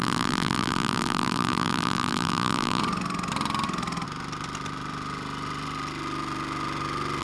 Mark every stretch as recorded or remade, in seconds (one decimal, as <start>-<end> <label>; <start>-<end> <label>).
0.0-2.8 remade; 2.8-7.2 recorded